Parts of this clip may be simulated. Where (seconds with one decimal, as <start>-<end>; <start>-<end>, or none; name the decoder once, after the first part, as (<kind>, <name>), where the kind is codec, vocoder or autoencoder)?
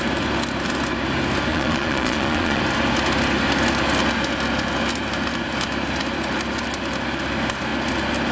1.5-2.6 (vocoder, Vocos)